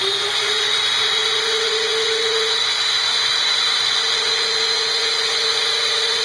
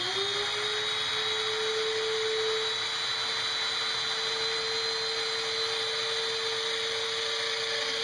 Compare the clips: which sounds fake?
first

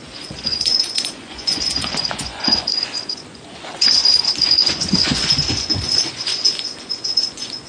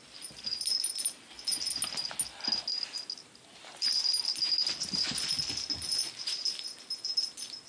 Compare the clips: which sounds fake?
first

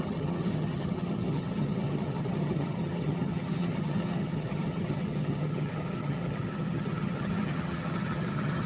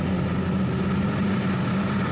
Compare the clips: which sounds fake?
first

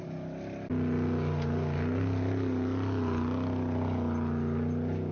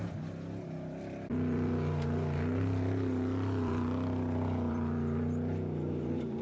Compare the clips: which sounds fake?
second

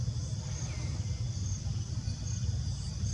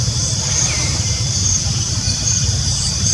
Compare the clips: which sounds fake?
second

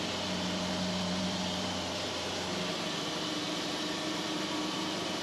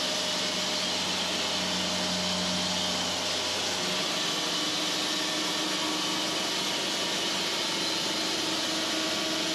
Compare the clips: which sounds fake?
first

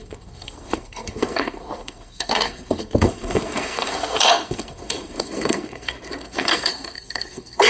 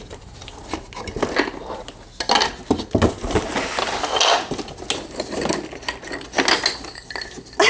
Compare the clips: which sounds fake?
first